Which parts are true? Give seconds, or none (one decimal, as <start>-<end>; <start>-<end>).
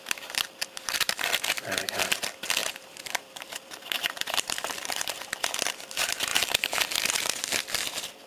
0.0-2.6; 5.3-6.3; 6.8-8.3